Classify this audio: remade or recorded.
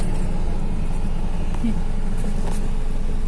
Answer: recorded